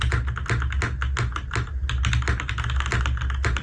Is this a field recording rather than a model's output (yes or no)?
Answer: yes